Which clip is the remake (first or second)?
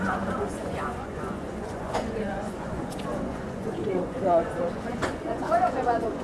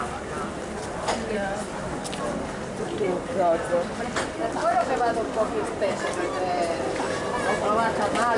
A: first